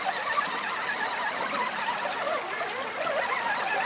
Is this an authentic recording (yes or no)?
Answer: yes